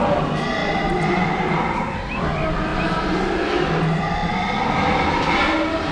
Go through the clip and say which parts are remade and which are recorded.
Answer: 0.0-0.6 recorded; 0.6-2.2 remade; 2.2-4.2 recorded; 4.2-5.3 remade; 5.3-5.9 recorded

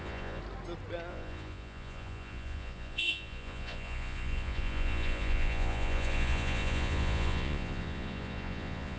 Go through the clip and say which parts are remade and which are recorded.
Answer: 0.0-0.4 remade; 0.4-1.1 recorded; 1.1-9.0 remade